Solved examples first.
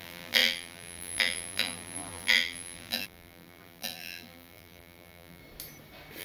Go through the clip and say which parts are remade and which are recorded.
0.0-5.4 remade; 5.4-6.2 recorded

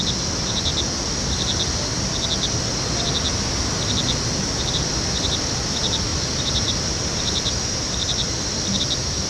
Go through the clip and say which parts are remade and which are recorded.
0.0-0.7 remade; 0.7-4.7 recorded; 4.7-9.3 remade

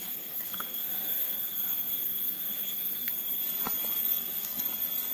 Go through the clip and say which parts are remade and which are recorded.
0.0-3.1 remade; 3.1-4.0 recorded; 4.0-4.6 remade; 4.6-5.1 recorded

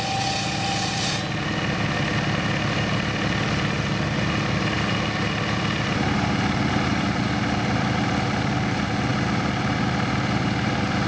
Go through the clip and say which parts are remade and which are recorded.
0.0-11.1 recorded

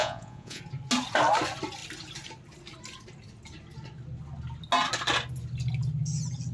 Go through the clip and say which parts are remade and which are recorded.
0.0-0.6 remade; 0.6-6.5 recorded